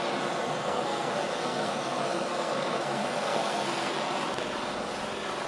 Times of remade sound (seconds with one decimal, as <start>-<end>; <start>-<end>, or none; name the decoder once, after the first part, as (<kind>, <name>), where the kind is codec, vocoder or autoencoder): 0.6-3.9 (codec, SNAC)

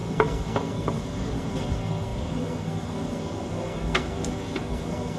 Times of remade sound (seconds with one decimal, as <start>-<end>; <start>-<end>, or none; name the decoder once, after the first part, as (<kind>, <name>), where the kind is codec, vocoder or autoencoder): 0.0-5.2 (codec, SNAC)

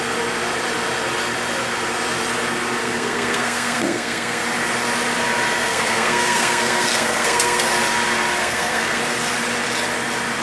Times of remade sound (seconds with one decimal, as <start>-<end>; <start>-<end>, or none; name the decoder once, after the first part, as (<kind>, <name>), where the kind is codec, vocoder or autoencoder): 2.8-4.4 (codec, SNAC); 5.6-7.7; 8.4-9.0

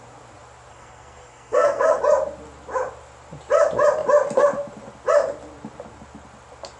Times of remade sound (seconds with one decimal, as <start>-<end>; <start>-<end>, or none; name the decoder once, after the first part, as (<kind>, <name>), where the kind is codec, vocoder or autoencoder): 0.7-2.0 (codec, SNAC)

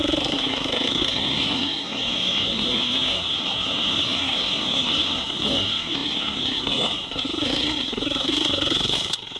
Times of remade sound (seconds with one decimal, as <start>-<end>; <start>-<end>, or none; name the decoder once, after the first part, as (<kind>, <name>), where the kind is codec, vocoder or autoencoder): 0.0-9.4 (codec, SNAC)